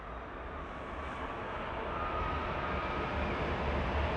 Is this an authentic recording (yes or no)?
yes